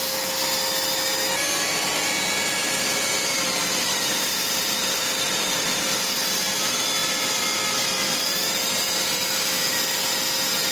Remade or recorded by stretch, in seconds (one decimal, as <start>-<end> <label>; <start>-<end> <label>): 0.0-2.6 recorded; 2.6-6.3 remade; 6.3-7.0 recorded; 7.0-8.4 remade; 8.4-10.7 recorded